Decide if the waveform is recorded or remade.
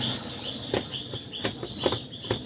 recorded